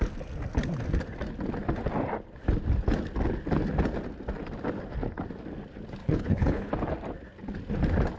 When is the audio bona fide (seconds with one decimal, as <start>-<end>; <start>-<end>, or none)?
0.0-6.0; 6.7-8.2